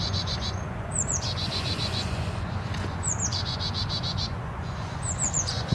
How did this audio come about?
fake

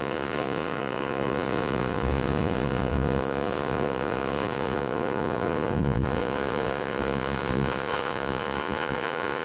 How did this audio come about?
fake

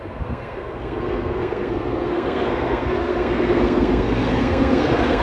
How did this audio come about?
fake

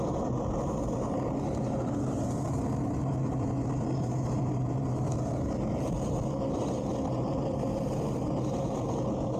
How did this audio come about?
real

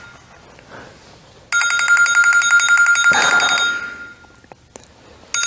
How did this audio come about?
real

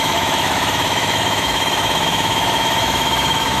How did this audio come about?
fake